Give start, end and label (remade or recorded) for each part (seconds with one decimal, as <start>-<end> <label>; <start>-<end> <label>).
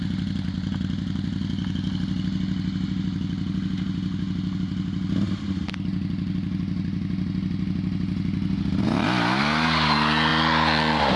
0.0-11.2 recorded